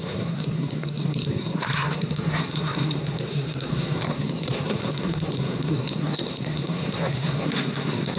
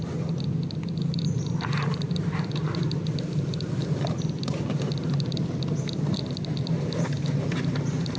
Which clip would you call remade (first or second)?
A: first